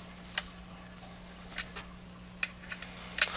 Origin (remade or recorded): recorded